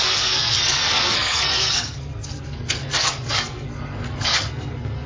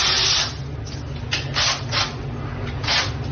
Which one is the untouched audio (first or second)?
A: second